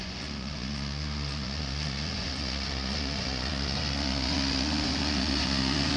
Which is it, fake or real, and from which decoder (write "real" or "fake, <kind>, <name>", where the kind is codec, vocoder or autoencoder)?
fake, vocoder, Vocos